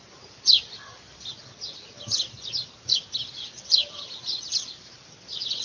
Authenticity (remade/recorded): recorded